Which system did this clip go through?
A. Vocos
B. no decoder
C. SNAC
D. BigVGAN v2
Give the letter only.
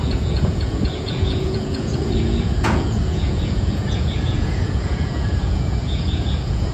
A